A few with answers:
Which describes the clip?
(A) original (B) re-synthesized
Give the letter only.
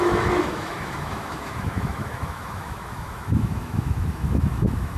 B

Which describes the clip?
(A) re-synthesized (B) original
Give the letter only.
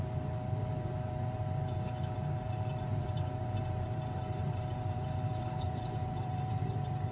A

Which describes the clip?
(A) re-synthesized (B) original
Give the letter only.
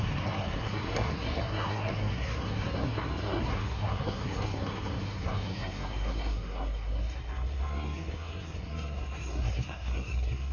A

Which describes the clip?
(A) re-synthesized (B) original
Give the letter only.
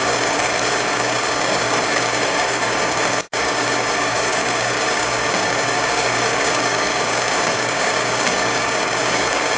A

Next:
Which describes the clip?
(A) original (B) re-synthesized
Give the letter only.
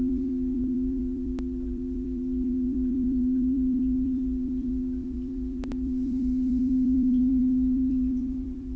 B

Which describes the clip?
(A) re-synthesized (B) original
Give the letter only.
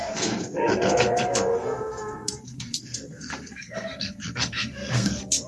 A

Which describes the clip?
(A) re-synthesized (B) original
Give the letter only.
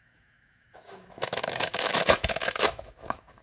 A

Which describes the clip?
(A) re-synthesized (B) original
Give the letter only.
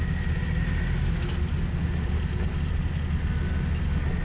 B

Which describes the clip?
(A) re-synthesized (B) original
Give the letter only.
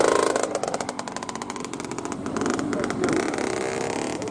B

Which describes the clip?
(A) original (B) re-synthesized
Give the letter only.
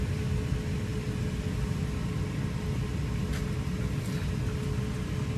A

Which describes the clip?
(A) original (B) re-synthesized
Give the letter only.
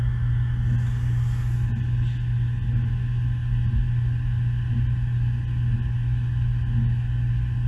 A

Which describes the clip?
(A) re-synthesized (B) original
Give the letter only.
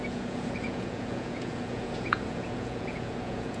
A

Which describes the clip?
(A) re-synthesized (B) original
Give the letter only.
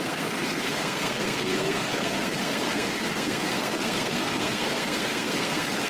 A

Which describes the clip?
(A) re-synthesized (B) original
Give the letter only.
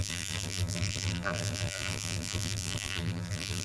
A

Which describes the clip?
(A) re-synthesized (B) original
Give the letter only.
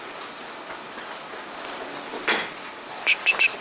B